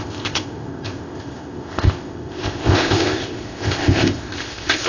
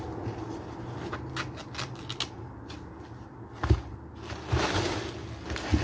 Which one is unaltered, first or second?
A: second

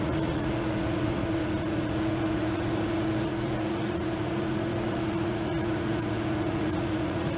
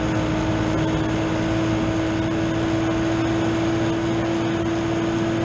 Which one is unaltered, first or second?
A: second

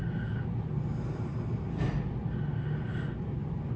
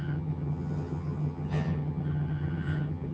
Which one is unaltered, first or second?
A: first